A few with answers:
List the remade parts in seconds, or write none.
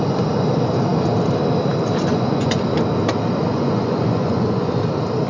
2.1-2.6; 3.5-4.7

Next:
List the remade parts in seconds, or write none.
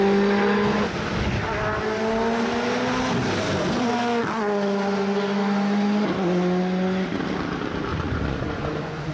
7.9-9.1